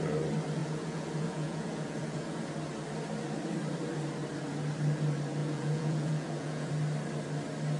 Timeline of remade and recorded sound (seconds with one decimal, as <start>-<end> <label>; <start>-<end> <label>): 0.0-0.6 recorded; 0.6-2.5 remade; 2.5-5.4 recorded; 5.4-6.7 remade; 6.7-7.8 recorded